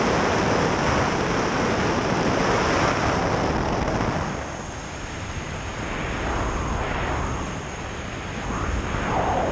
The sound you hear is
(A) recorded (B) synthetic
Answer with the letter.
A